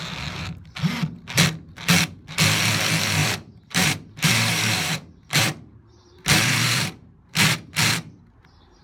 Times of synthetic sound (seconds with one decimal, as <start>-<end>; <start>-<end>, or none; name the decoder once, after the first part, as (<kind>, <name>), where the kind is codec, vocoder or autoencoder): 3.2-8.2 (vocoder, BigVGAN v2)